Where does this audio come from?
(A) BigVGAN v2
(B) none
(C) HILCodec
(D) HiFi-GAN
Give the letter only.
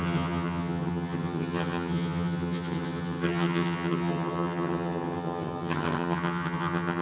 D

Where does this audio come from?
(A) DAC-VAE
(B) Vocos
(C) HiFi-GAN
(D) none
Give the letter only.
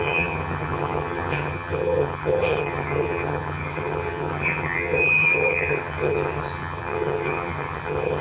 C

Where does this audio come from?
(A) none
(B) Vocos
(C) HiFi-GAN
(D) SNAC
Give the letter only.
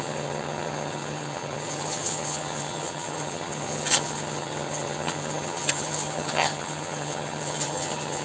C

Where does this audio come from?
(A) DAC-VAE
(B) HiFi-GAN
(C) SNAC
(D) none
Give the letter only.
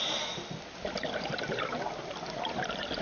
D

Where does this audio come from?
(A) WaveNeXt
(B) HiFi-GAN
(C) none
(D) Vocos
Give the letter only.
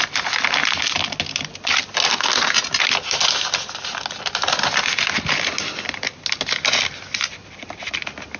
C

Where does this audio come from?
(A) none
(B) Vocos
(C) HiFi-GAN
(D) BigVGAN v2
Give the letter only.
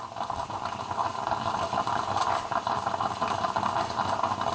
A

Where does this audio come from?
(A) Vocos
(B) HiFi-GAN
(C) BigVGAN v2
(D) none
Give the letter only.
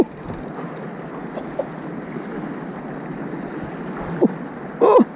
D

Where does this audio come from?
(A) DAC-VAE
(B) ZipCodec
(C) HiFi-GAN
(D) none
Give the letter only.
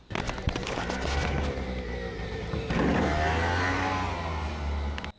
D